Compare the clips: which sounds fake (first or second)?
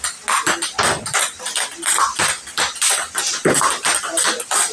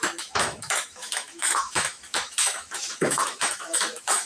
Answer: second